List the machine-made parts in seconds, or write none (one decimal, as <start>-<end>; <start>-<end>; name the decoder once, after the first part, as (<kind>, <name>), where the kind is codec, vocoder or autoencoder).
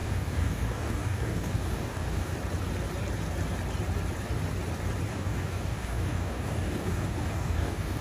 0.0-2.3 (codec, DAC); 5.1-8.0